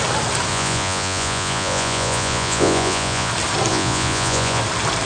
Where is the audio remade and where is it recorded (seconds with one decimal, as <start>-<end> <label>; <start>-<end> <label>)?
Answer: 0.0-0.5 recorded; 0.5-3.3 remade; 3.3-3.7 recorded; 3.7-4.6 remade; 4.6-5.1 recorded